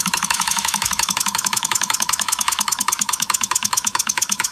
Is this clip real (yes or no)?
no